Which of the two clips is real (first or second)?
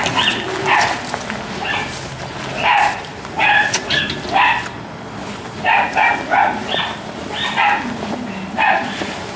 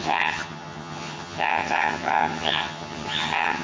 first